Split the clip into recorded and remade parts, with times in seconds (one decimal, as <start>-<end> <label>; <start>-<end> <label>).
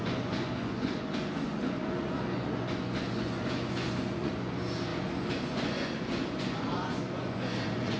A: 0.0-8.0 remade